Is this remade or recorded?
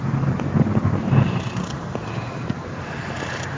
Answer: recorded